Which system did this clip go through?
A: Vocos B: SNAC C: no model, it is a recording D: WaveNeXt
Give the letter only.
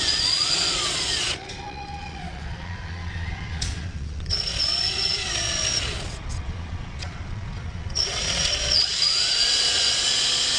A